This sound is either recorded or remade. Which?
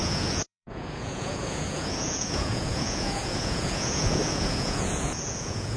remade